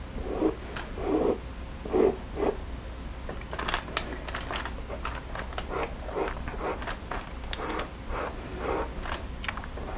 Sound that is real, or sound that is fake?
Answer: real